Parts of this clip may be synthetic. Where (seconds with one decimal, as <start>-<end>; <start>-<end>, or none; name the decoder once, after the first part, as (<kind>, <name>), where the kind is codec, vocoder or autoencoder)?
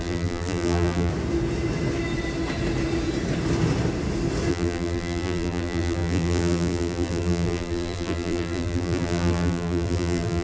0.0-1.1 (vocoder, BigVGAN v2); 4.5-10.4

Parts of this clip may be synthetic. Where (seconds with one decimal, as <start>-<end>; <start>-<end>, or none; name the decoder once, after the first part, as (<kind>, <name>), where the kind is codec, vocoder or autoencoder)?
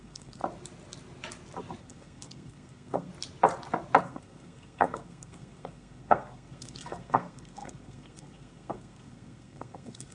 0.0-0.4 (codec, SNAC); 1.8-3.1; 4.0-10.1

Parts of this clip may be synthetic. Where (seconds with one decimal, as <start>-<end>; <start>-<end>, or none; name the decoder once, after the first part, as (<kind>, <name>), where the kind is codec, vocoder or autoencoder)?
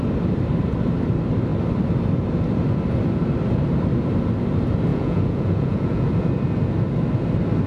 4.9-6.1 (vocoder, Vocos)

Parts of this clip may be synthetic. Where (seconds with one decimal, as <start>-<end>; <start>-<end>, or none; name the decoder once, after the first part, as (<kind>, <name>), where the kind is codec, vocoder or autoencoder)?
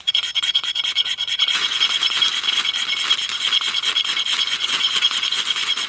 0.0-2.3 (vocoder, Vocos); 4.4-5.9